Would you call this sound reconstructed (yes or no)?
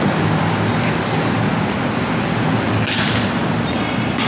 no